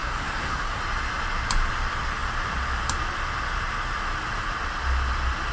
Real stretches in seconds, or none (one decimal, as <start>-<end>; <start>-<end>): 0.8-5.5